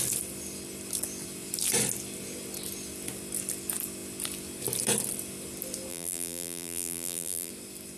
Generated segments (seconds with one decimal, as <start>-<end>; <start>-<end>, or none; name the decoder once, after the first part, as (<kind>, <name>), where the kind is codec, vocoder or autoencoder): 5.9-7.5 (vocoder, BigVGAN v2)